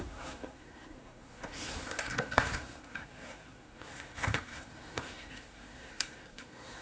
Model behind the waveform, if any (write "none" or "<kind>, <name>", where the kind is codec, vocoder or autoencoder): codec, SNAC